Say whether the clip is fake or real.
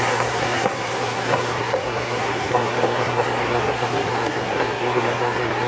fake